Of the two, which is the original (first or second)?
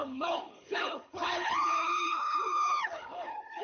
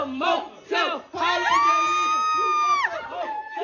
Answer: second